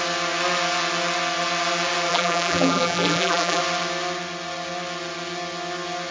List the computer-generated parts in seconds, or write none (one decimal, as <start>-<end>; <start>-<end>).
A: 2.1-3.6